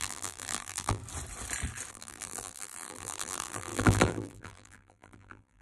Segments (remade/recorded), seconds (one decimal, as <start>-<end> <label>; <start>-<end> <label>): 0.0-1.0 remade; 1.0-1.9 recorded; 1.9-5.6 remade